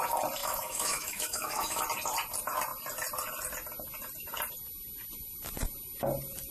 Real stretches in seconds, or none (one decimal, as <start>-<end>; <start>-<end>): 0.0-0.4; 1.8-6.5